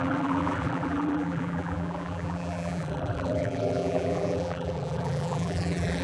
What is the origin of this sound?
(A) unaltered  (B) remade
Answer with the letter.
B